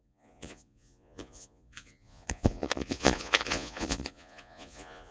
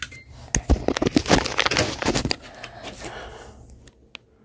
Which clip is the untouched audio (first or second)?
second